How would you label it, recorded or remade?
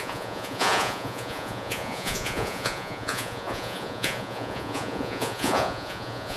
remade